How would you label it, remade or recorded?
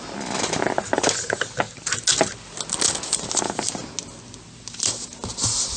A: recorded